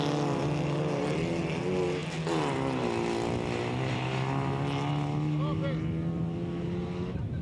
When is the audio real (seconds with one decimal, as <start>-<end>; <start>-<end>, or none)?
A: 0.0-7.4